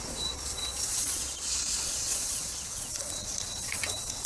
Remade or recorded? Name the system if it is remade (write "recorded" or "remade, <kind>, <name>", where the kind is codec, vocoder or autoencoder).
remade, vocoder, Vocos